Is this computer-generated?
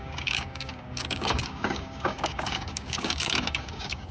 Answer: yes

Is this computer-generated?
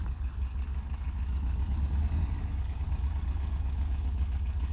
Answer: yes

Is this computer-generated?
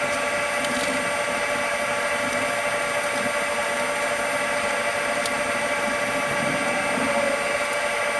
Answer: no